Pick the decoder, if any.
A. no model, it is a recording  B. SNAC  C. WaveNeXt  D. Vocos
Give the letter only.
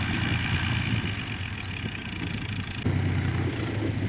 A